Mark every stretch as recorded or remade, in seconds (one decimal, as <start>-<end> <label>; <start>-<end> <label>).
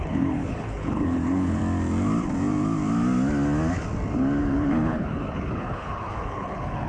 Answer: 0.0-1.6 remade; 1.6-4.4 recorded; 4.4-6.9 remade